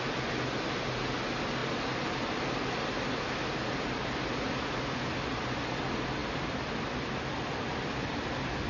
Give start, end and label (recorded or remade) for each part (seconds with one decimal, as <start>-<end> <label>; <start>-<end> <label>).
0.0-8.7 recorded